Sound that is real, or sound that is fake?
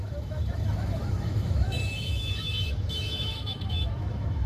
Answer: fake